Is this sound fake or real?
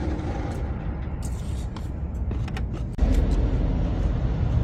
real